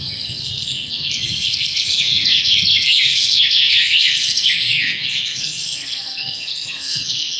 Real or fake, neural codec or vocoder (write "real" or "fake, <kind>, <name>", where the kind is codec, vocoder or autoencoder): fake, codec, SNAC